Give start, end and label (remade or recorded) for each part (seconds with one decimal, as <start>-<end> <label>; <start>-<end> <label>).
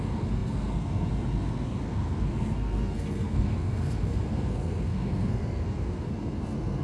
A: 0.0-6.8 remade